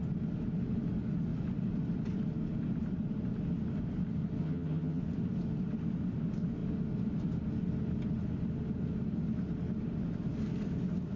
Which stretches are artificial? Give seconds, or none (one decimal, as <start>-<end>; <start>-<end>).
4.4-5.0